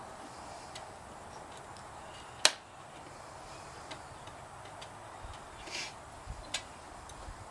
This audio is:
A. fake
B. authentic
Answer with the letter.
B